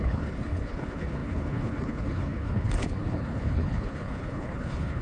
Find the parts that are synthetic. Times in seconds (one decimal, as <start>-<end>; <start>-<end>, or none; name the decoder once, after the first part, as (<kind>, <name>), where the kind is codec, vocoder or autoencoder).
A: 0.0-5.0 (codec, HILCodec)